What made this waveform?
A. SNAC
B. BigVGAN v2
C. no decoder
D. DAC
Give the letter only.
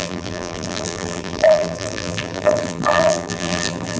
B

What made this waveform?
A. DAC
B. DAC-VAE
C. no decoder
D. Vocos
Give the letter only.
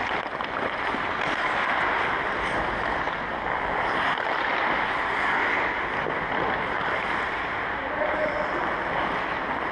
C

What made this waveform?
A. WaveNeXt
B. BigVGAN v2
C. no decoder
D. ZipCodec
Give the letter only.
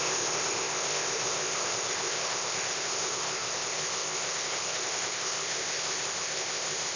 D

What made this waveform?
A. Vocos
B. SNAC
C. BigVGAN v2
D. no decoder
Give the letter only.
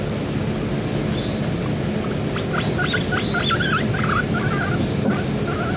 D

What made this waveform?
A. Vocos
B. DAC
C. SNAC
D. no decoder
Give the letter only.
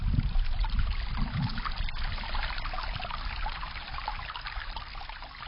D